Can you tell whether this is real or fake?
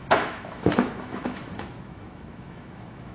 fake